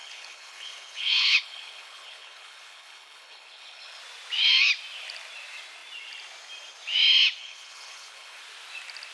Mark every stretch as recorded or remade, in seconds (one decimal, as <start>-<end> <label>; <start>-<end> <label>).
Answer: 0.0-4.0 remade; 4.0-7.4 recorded; 7.4-8.4 remade; 8.4-9.1 recorded